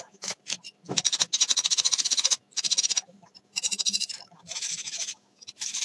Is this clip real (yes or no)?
no